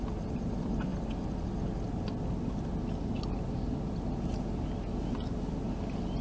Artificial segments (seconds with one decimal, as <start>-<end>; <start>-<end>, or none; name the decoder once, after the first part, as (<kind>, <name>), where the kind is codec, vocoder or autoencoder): none